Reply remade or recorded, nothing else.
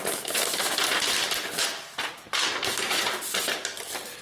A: recorded